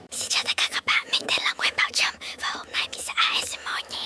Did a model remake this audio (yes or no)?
yes